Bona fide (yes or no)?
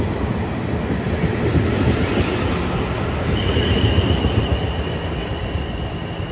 yes